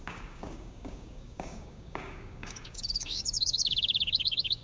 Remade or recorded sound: remade